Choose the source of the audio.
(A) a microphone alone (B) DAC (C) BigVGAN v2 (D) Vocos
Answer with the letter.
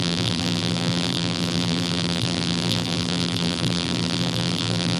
C